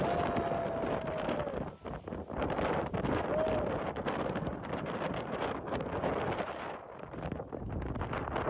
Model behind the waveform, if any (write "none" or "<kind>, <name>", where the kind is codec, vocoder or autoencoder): none